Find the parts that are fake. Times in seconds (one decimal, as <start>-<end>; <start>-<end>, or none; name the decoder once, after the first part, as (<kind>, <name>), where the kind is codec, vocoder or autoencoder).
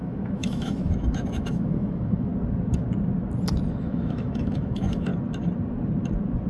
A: 0.0-2.3 (autoencoder, DAC-VAE); 3.7-5.1